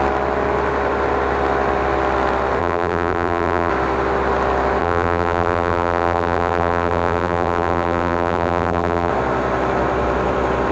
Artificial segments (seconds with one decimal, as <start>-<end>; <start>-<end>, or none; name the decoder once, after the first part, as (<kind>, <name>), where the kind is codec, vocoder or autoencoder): 2.6-3.7 (vocoder, BigVGAN v2); 4.8-9.1